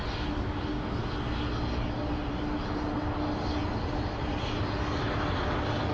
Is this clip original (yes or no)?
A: yes